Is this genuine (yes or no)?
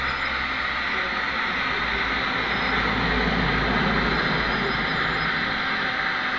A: yes